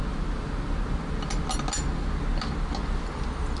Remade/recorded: recorded